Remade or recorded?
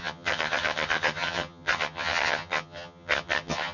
remade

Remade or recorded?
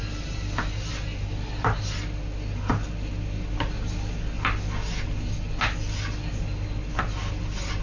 recorded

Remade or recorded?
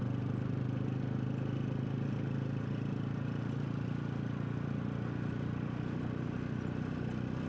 recorded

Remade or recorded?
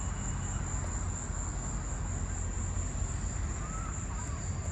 recorded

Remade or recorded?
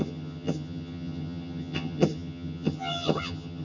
remade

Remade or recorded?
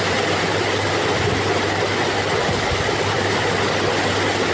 recorded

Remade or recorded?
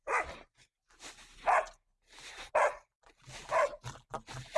recorded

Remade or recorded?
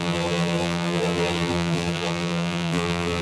remade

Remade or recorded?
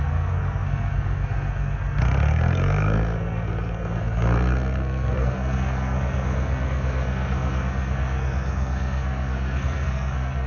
remade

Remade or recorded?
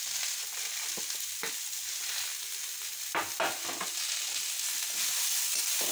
recorded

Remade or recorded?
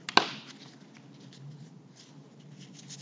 recorded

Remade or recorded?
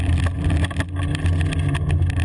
recorded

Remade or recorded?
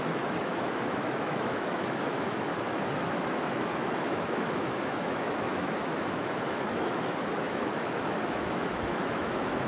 remade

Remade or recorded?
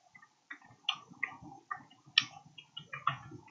recorded